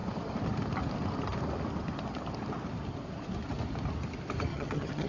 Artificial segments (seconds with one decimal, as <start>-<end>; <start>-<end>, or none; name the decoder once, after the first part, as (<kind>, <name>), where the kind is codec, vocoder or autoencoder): 4.5-5.1 (vocoder, HiFi-GAN)